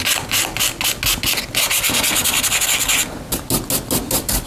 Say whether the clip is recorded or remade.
recorded